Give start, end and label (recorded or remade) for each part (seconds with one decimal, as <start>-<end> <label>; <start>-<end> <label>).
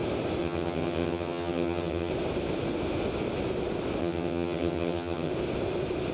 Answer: 0.0-0.4 recorded; 0.4-2.1 remade; 2.1-4.0 recorded; 4.0-5.3 remade; 5.3-6.1 recorded